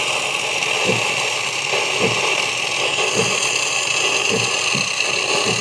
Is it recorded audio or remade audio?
recorded